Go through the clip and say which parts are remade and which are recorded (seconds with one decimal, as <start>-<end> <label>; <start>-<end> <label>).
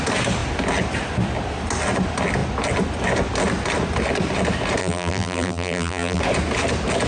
0.0-4.8 recorded; 4.8-6.2 remade; 6.2-7.1 recorded